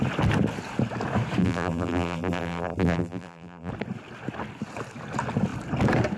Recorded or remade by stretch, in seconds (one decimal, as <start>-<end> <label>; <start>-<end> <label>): 0.0-1.4 recorded; 1.4-3.7 remade; 3.7-6.2 recorded